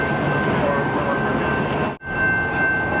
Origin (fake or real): real